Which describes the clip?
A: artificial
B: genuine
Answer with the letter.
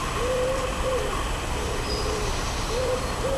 B